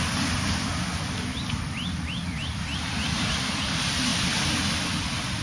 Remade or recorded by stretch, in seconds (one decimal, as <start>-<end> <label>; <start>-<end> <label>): 0.0-5.4 recorded